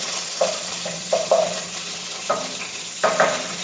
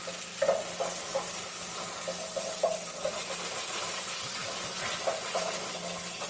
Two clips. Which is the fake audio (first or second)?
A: first